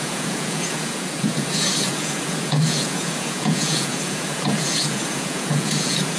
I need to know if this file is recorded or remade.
remade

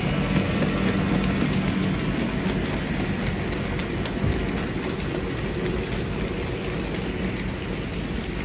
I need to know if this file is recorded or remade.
recorded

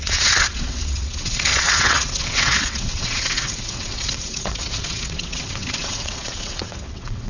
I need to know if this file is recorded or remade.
remade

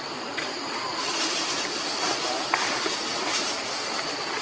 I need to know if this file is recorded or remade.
recorded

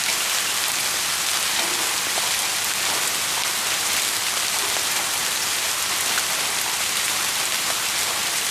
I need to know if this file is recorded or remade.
recorded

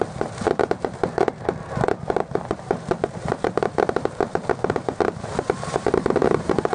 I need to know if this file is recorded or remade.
remade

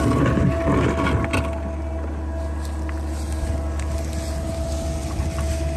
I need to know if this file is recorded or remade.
recorded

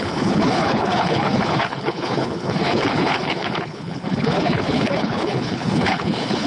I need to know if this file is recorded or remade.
remade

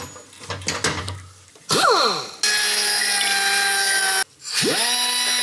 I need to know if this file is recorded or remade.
recorded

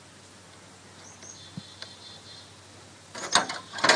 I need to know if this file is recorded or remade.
recorded